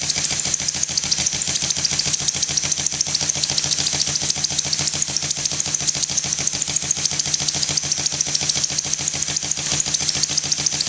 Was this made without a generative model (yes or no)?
yes